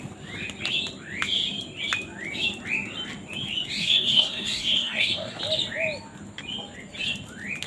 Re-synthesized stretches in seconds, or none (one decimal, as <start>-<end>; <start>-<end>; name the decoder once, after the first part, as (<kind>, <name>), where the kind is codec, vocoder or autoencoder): 3.8-5.4 (codec, SNAC)